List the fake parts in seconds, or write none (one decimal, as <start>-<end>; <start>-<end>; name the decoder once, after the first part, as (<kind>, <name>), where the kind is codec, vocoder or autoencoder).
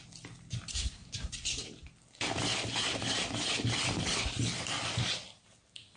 0.7-1.3 (codec, SNAC)